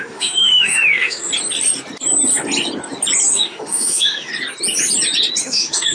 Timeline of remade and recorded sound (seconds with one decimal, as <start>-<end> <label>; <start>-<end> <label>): 0.0-1.3 remade; 1.3-3.3 recorded; 3.3-4.3 remade; 4.3-5.4 recorded; 5.4-5.9 remade